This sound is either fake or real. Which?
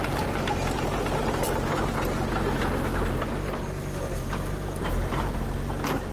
fake